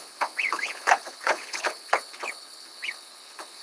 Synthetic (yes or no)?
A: yes